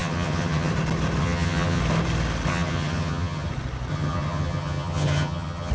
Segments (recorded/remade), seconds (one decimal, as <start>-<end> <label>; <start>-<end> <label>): 0.0-0.7 remade; 0.7-1.2 recorded; 1.2-1.8 remade; 1.8-2.5 recorded; 2.5-3.5 remade; 3.5-3.9 recorded; 3.9-5.7 remade